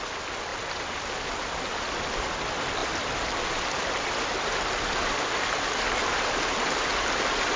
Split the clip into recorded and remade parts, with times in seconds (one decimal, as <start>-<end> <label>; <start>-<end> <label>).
0.0-7.6 recorded